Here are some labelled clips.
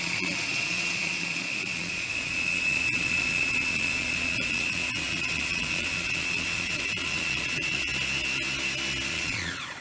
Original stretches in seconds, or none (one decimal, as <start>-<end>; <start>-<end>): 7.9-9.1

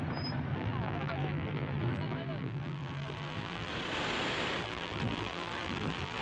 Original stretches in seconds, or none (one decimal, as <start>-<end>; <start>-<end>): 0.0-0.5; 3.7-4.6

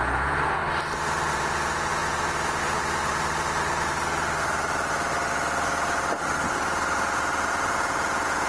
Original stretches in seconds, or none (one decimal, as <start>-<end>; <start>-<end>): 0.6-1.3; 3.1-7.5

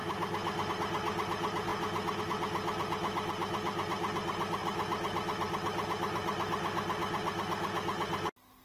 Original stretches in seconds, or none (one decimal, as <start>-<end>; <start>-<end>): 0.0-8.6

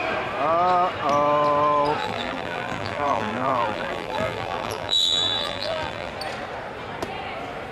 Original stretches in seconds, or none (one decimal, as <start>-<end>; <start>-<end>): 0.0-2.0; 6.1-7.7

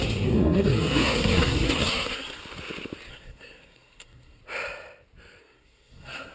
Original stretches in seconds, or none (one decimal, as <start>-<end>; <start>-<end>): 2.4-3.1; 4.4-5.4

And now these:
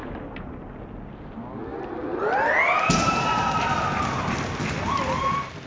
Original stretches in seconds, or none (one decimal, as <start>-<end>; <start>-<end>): 0.0-5.7

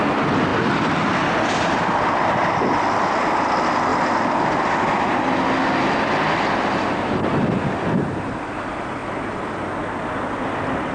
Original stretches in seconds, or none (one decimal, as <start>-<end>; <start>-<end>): 0.0-0.5; 3.1-10.9